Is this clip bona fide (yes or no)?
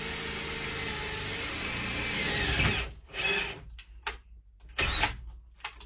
yes